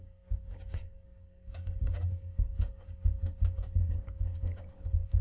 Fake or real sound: fake